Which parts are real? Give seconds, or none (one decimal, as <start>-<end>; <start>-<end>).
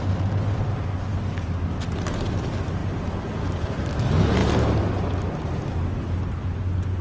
0.0-2.8; 3.9-7.0